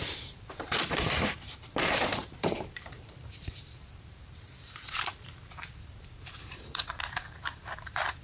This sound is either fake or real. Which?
fake